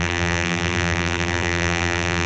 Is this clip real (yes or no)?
no